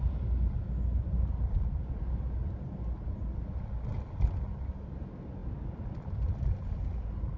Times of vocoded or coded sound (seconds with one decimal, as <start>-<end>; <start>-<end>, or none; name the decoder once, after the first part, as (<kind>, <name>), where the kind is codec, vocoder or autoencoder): none